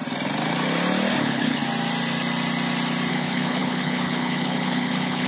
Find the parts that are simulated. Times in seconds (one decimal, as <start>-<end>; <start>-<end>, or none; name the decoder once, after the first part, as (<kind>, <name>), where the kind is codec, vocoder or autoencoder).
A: 1.2-1.6 (codec, HILCodec); 3.1-5.3